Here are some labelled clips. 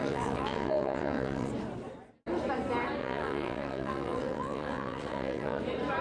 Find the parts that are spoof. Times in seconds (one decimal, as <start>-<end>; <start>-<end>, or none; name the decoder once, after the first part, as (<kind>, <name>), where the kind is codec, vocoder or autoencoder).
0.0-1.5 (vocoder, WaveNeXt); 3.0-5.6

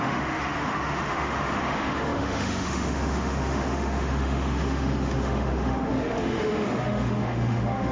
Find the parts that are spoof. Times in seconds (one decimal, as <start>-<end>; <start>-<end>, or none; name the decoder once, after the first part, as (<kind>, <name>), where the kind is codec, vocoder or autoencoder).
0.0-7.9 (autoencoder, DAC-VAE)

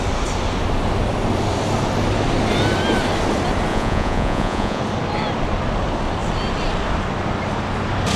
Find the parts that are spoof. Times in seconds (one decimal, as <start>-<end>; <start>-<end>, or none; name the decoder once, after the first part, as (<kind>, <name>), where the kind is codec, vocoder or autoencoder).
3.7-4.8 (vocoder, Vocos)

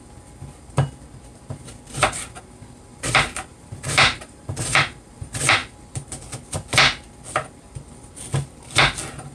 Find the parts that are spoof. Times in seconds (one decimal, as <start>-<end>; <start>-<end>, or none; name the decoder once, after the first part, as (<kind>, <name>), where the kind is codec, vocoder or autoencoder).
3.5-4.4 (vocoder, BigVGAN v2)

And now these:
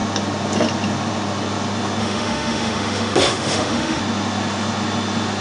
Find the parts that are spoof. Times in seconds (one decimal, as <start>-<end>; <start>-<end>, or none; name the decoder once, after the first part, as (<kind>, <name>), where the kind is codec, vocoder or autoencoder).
2.0-4.0 (autoencoder, DAC-VAE)